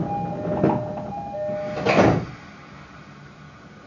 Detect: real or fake real